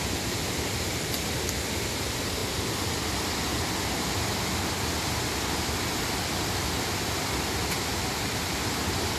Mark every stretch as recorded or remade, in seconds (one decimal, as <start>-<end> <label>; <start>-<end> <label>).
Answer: 0.0-9.2 recorded